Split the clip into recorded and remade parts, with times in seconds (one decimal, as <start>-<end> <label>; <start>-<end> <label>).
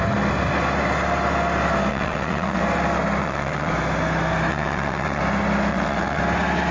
0.0-1.9 recorded; 1.9-2.6 remade; 2.6-3.2 recorded; 3.2-3.7 remade; 3.7-4.5 recorded; 4.5-5.2 remade; 5.2-5.7 recorded; 5.7-6.2 remade; 6.2-6.7 recorded